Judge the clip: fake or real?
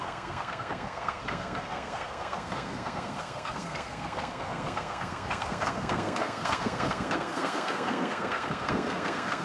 fake